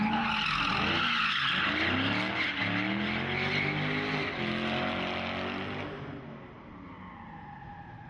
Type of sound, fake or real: real